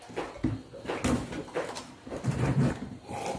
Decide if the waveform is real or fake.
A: real